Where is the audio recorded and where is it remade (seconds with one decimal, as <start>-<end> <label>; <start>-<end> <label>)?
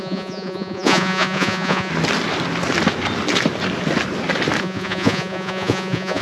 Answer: 0.0-1.9 remade; 1.9-4.6 recorded; 4.6-6.2 remade